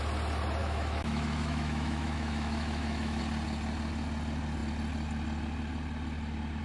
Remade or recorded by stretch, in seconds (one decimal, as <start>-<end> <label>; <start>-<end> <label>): 0.0-0.6 recorded; 0.6-3.2 remade; 3.2-6.6 recorded